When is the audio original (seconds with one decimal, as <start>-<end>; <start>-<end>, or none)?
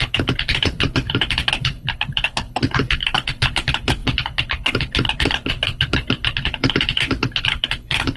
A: none